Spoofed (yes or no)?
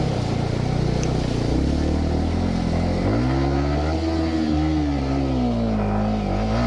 no